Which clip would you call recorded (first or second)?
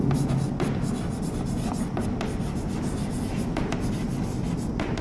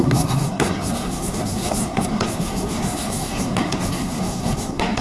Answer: first